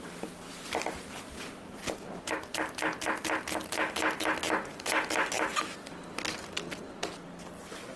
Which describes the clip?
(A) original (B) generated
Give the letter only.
A